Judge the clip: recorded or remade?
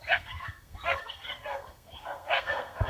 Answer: remade